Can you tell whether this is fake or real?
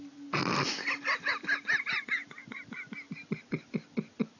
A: real